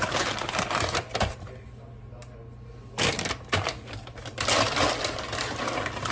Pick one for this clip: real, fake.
real